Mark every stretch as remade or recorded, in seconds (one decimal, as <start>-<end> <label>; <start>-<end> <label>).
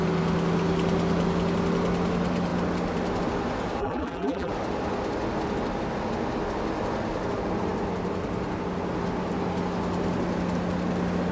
0.0-3.8 recorded; 3.8-4.5 remade; 4.5-11.3 recorded